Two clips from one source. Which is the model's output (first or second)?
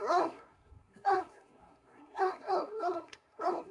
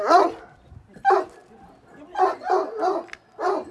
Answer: first